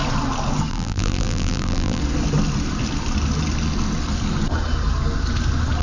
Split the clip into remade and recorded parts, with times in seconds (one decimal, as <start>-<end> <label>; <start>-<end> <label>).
0.0-0.7 recorded; 0.7-2.0 remade; 2.0-5.8 recorded